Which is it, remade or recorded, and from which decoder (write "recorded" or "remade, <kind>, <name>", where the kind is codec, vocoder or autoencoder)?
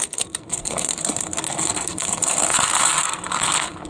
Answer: remade, codec, SNAC